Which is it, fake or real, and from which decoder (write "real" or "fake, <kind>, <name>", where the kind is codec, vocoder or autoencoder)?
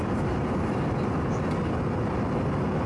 real